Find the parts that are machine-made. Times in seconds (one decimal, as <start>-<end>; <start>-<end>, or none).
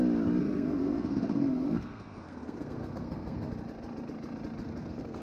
0.4-3.5; 4.6-5.2